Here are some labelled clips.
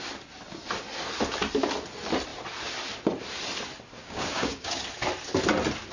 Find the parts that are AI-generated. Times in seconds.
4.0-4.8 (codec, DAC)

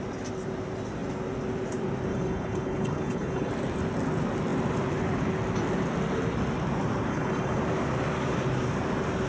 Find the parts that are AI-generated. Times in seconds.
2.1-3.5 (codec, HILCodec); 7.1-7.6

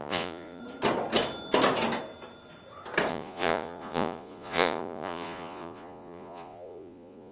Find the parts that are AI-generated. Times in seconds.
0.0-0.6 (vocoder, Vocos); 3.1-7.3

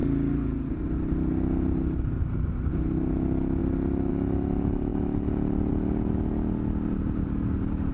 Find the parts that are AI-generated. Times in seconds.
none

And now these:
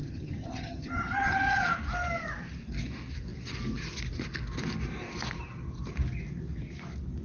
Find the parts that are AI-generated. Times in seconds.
0.0-1.6 (vocoder, HiFi-GAN)

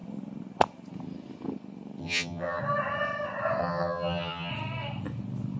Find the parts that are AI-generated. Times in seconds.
2.0-2.6 (vocoder, HiFi-GAN); 3.6-4.5

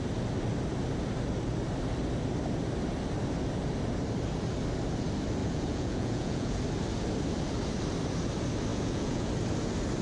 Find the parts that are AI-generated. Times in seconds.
5.4-6.6 (vocoder, Vocos); 8.7-9.3

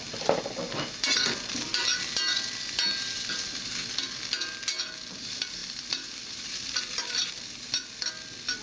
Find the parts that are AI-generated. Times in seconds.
1.7-3.9 (vocoder, BigVGAN v2); 5.6-7.3